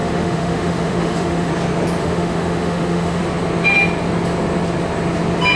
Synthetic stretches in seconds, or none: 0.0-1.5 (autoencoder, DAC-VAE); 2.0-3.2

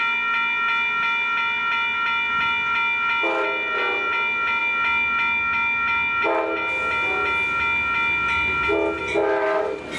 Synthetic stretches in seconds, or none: none

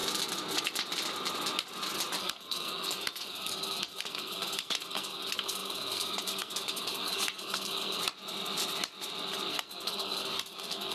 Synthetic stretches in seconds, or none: 2.2-8.0 (codec, SNAC); 9.5-10.9

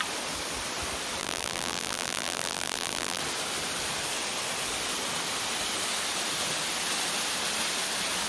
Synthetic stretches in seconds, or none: 1.2-3.2 (vocoder, BigVGAN v2)

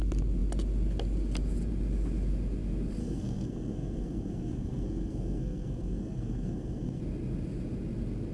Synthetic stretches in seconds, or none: 3.0-7.0 (codec, SNAC)

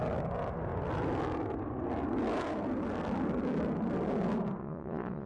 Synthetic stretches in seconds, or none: 4.6-5.3 (vocoder, Vocos)

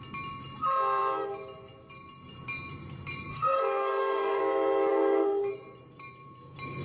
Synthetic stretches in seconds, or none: 3.3-4.4 (codec, SNAC); 4.9-5.5